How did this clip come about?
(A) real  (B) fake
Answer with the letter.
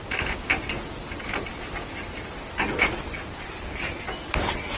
A